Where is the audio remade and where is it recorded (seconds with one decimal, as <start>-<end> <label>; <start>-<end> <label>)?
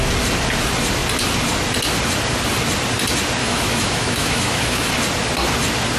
0.0-3.4 recorded; 3.4-4.9 remade; 4.9-6.0 recorded